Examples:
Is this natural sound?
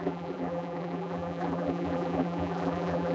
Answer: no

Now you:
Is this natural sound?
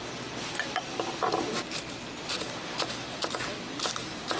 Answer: yes